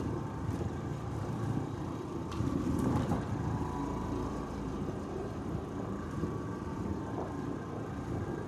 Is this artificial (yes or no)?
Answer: yes